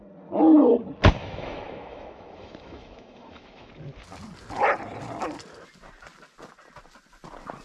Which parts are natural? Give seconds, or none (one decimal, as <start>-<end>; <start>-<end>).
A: 0.0-1.2; 3.7-7.6